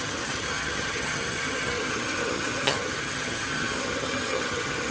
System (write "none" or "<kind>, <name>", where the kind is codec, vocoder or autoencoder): vocoder, HiFi-GAN